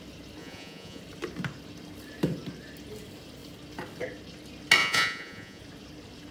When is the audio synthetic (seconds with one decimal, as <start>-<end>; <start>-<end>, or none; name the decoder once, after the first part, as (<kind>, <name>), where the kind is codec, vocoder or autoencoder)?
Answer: 0.4-1.0 (vocoder, Vocos); 4.8-5.6